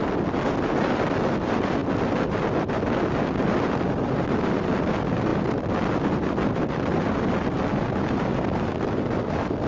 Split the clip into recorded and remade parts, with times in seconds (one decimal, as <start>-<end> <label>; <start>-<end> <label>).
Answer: 0.0-9.7 recorded